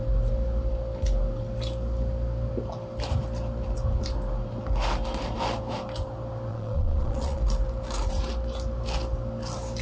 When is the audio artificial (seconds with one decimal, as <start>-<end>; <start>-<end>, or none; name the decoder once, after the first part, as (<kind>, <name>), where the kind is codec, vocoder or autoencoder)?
6.5-7.4 (vocoder, Vocos)